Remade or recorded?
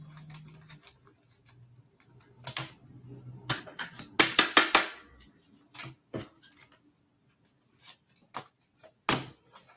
recorded